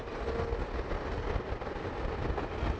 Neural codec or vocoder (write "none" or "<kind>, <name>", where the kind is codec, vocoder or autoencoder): none